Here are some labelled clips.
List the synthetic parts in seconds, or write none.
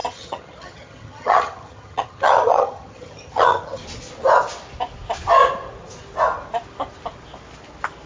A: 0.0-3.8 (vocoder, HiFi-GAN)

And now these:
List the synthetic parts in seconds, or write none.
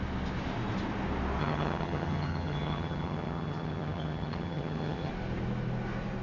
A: 1.4-5.1 (vocoder, HiFi-GAN)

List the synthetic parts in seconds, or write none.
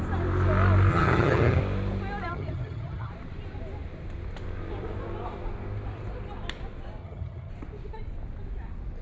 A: 0.9-1.6 (vocoder, HiFi-GAN); 2.3-3.1; 7.0-7.5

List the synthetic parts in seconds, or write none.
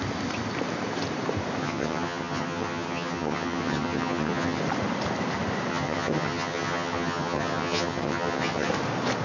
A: 1.6-4.6 (vocoder, HiFi-GAN); 5.7-8.7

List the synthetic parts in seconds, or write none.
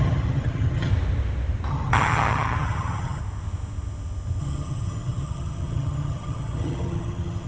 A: 0.0-0.9 (vocoder, HiFi-GAN); 1.7-3.2; 4.4-7.5